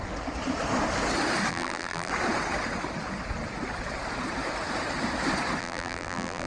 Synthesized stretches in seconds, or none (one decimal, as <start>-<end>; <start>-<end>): 1.5-2.1; 5.6-6.5